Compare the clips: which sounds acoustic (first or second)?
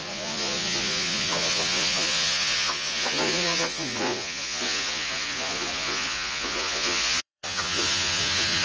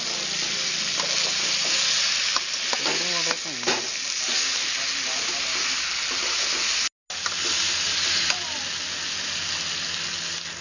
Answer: second